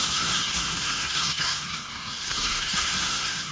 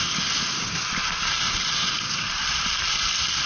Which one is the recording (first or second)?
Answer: second